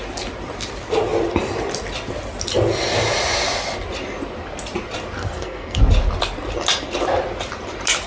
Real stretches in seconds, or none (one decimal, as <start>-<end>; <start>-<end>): 0.0-5.2; 5.8-8.1